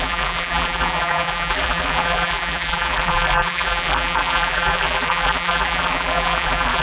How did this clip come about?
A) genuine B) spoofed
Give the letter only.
B